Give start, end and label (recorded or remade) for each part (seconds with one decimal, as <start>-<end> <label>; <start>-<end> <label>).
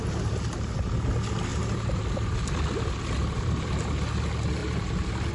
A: 0.0-1.5 recorded; 1.5-3.8 remade; 3.8-4.6 recorded; 4.6-5.3 remade